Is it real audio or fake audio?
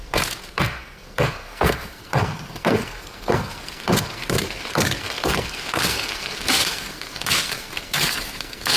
fake